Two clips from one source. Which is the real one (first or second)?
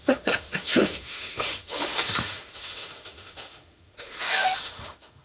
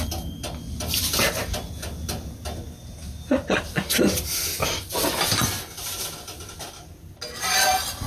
second